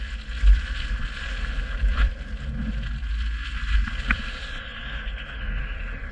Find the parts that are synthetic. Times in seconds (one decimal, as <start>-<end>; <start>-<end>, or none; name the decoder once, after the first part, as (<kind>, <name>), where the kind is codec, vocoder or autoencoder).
none